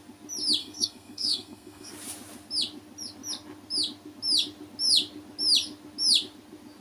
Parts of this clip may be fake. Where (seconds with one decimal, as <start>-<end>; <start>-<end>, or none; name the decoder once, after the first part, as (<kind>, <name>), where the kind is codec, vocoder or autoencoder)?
0.6-1.9 (codec, SNAC)